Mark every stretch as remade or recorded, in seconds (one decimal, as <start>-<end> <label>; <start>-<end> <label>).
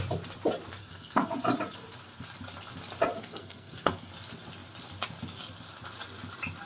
0.0-0.8 recorded; 0.8-1.3 remade; 1.3-3.2 recorded; 3.2-4.1 remade; 4.1-6.7 recorded